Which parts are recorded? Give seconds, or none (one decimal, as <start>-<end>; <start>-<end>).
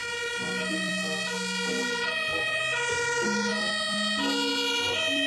0.0-1.7; 2.6-5.3